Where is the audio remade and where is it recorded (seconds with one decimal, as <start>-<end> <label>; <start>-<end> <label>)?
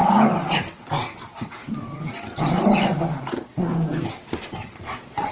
0.0-3.2 recorded; 3.2-3.7 remade; 3.7-4.8 recorded; 4.8-5.3 remade